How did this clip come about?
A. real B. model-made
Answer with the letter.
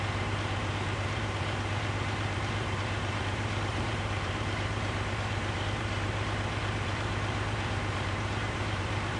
B